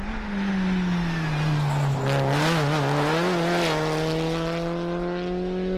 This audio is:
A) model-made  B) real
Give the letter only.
B